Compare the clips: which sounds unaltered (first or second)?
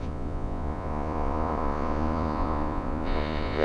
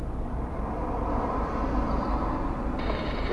second